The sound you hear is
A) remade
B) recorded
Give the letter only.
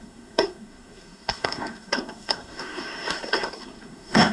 A